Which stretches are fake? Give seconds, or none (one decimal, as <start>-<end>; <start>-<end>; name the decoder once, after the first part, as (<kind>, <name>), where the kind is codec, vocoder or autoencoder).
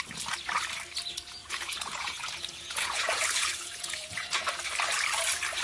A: 1.4-4.5 (vocoder, Vocos)